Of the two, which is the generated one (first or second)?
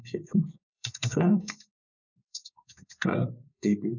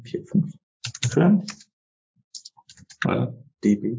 first